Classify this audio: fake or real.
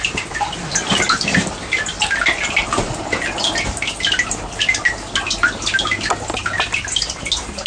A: real